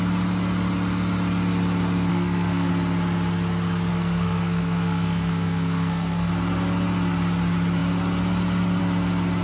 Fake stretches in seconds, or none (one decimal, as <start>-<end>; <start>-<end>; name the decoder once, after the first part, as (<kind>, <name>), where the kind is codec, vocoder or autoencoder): 2.1-2.7 (codec, SNAC); 3.9-6.3